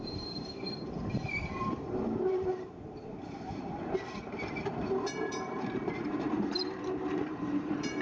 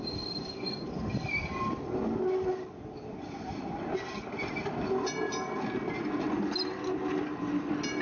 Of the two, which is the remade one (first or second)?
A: first